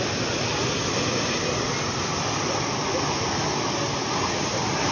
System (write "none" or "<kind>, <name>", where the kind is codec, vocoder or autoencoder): none